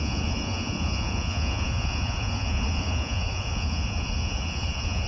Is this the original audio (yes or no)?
no